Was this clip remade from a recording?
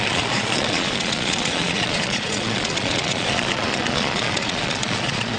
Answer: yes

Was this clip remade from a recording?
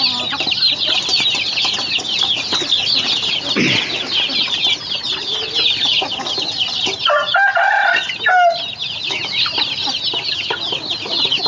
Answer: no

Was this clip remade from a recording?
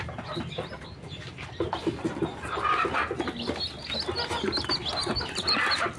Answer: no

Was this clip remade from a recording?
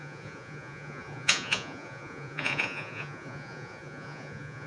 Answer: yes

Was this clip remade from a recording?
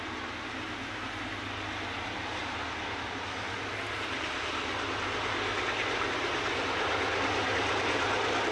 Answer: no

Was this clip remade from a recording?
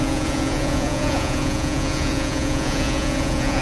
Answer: yes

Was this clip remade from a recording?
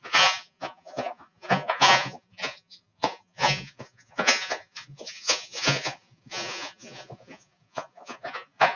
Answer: yes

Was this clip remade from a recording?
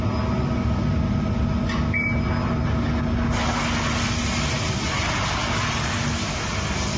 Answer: no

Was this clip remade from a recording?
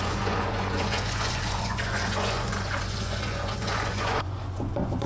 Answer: yes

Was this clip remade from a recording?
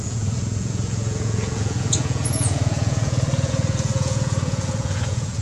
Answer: yes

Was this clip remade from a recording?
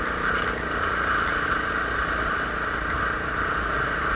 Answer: no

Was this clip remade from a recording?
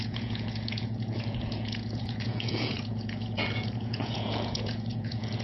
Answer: yes